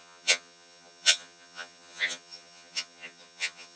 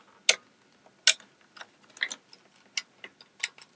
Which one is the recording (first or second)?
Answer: second